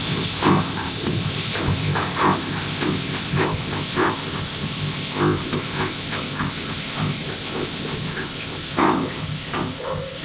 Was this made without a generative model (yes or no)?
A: no